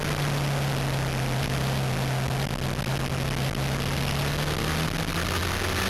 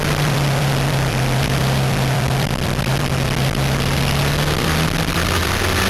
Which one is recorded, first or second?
first